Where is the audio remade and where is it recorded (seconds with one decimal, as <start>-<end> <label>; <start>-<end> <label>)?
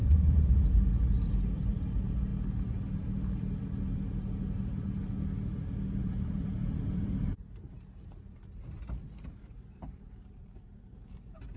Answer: 0.0-2.3 remade; 2.3-6.0 recorded; 6.0-11.6 remade